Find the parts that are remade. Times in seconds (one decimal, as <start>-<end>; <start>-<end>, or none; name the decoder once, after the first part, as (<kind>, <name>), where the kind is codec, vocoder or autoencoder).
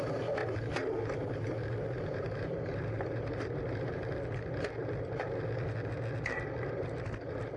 0.4-4.2 (vocoder, BigVGAN v2)